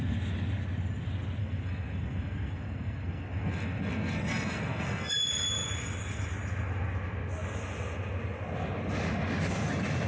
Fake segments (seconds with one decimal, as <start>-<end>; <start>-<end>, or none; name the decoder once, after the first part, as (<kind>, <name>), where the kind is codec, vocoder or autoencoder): 1.4-5.1 (codec, SNAC)